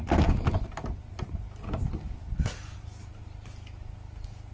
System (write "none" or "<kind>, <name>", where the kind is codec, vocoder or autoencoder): none